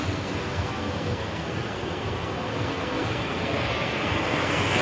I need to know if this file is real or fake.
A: fake